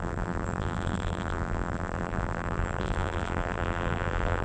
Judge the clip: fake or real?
fake